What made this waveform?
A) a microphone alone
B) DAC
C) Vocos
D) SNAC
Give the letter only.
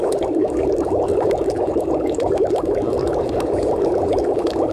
B